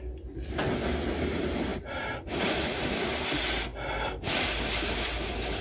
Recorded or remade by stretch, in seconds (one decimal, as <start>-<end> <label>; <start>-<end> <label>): 0.0-5.6 recorded

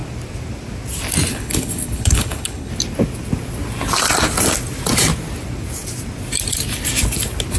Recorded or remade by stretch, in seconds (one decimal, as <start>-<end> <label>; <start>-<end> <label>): 0.0-1.3 recorded; 1.3-2.7 remade; 2.7-7.6 recorded